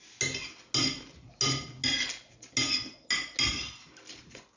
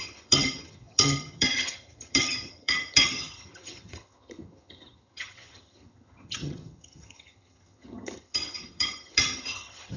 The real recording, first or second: first